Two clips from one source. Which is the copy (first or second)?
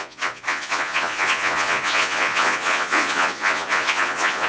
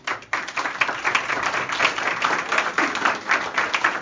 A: first